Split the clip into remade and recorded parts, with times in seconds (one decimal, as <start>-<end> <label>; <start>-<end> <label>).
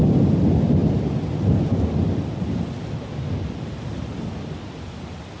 0.0-5.4 recorded